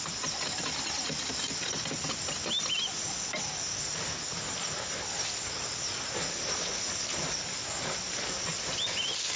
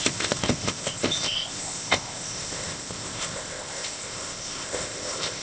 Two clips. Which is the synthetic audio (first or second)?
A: second